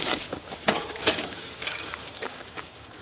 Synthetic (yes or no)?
yes